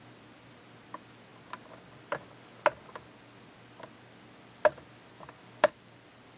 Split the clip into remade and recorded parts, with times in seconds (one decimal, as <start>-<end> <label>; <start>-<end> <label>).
0.0-6.4 recorded